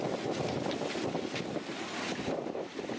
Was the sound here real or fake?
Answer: fake